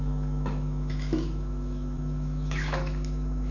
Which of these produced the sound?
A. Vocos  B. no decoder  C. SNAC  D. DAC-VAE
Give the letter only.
D